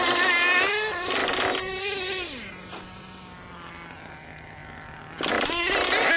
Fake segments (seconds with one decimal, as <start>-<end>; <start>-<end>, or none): none